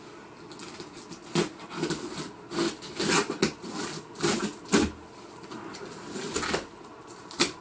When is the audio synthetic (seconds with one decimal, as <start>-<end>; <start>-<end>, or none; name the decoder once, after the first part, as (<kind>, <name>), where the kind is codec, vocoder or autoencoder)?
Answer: none